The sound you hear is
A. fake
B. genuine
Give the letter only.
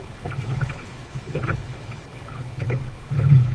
A